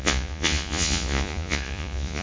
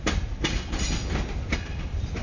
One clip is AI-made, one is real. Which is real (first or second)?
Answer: second